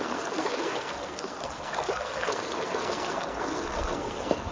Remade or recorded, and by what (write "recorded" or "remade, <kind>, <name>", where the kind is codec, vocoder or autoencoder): remade, codec, SNAC